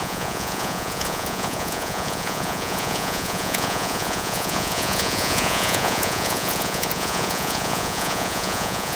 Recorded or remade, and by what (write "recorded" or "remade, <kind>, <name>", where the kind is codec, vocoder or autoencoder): remade, vocoder, Vocos